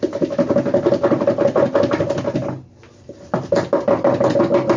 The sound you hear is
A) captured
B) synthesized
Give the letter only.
A